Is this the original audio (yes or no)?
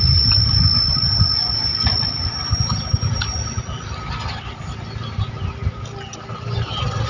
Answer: yes